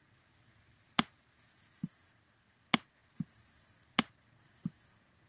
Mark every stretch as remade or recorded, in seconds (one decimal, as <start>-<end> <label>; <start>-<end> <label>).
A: 0.0-5.3 recorded